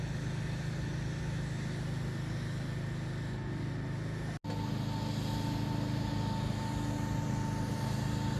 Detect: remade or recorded recorded